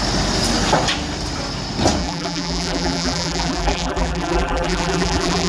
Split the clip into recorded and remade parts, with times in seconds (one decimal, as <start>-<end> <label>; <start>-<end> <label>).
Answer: 0.0-2.0 recorded; 2.0-5.5 remade